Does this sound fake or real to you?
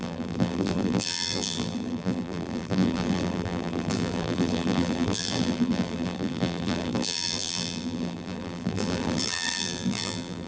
fake